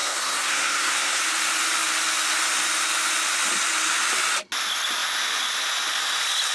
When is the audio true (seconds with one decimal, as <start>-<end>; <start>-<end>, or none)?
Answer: 1.2-6.5

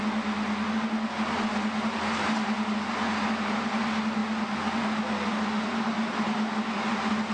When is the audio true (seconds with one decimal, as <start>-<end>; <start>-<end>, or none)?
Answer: 0.0-7.3

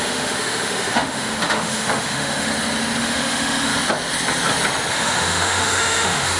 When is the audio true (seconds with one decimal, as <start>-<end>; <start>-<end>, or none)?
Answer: 2.5-3.0; 3.7-4.9

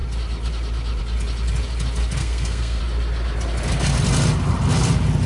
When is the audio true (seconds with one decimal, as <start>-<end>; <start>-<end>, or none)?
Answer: 0.0-2.2; 2.8-5.3

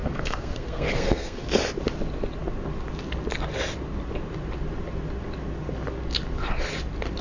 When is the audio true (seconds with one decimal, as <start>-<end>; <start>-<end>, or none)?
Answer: 1.4-7.2

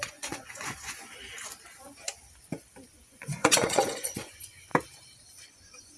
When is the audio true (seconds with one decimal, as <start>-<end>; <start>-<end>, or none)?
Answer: 1.1-2.9; 4.7-5.4